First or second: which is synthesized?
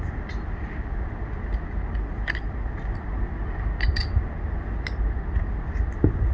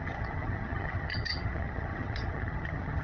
second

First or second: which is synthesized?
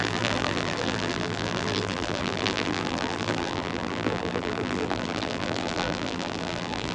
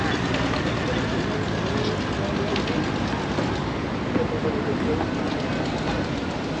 first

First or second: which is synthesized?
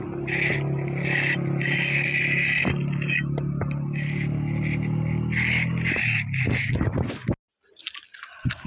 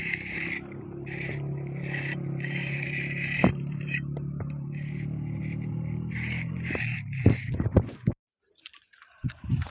second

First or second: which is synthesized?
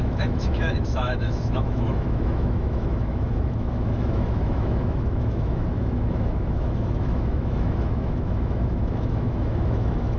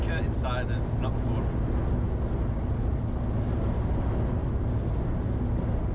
first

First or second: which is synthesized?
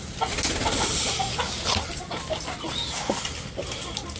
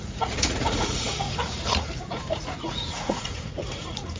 second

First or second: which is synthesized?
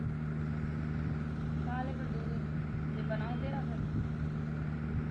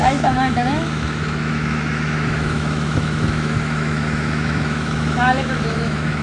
second